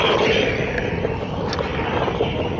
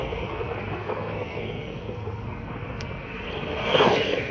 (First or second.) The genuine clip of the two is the first